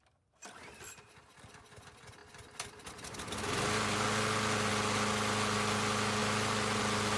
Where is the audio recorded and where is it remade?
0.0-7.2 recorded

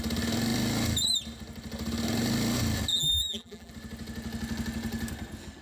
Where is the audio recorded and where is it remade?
0.0-2.9 recorded; 2.9-3.7 remade; 3.7-5.6 recorded

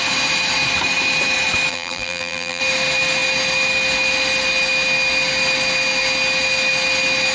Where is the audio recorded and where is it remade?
0.0-1.7 recorded; 1.7-2.6 remade; 2.6-7.3 recorded

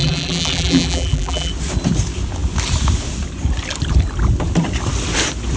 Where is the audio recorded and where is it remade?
0.0-1.5 remade; 1.5-5.6 recorded

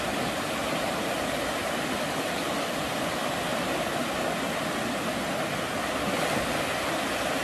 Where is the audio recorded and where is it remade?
0.0-0.6 recorded; 0.6-1.7 remade; 1.7-3.2 recorded; 3.2-4.1 remade; 4.1-7.4 recorded